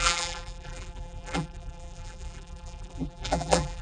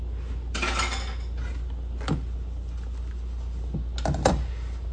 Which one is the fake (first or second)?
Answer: first